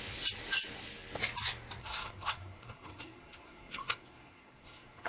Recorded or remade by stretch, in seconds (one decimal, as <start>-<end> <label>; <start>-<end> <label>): 0.0-1.8 recorded; 1.8-5.1 remade